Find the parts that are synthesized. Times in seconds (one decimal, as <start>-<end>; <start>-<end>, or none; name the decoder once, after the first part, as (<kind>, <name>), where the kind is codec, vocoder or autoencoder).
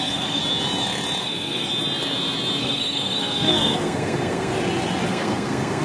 0.0-0.4 (codec, SNAC); 1.2-1.7; 2.6-4.5; 5.1-5.8